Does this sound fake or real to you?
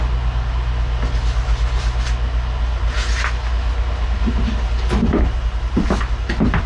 real